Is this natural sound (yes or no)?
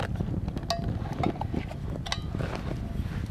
yes